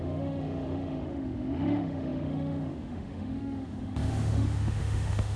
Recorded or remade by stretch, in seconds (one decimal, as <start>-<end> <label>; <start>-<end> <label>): 0.0-5.4 remade